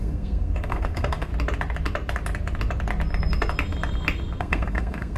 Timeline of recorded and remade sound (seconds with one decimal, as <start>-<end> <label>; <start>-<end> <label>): 0.0-1.3 remade; 1.3-4.4 recorded; 4.4-5.2 remade